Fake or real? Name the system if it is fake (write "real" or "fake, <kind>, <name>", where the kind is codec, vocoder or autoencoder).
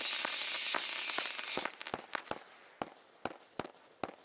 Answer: real